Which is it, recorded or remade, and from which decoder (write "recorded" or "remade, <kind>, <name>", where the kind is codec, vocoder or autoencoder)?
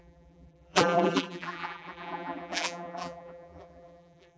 remade, vocoder, BigVGAN v2